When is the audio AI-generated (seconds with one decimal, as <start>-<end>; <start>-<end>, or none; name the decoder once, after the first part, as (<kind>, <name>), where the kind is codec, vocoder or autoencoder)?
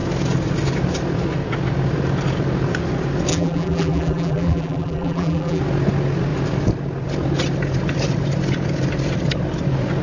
3.3-5.6 (vocoder, BigVGAN v2)